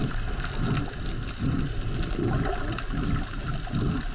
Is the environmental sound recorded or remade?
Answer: recorded